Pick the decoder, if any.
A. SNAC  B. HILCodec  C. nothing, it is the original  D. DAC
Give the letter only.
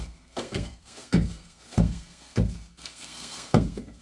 A